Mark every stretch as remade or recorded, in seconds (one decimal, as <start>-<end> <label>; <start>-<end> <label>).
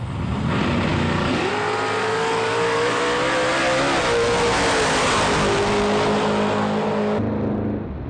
0.0-0.9 recorded; 0.9-1.5 remade; 1.5-2.0 recorded; 2.0-3.0 remade; 3.0-8.1 recorded